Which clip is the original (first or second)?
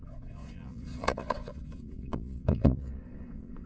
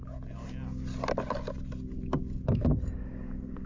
second